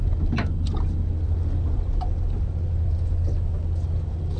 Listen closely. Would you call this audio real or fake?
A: real